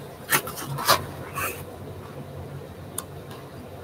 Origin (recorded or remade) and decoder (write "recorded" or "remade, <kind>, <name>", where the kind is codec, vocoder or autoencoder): recorded